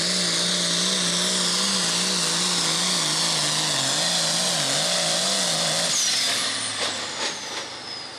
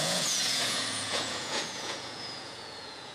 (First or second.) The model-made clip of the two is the second